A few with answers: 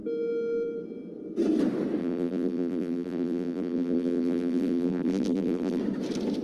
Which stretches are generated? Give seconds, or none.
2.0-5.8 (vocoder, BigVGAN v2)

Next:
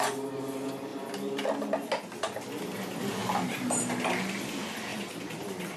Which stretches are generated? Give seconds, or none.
4.9-5.8 (vocoder, BigVGAN v2)